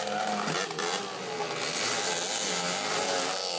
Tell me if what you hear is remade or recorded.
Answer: recorded